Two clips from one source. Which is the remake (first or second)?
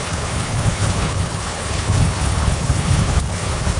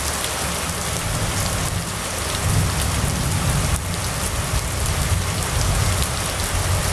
first